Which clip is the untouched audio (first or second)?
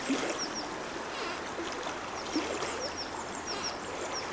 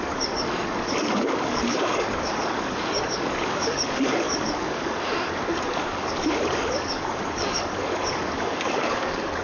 first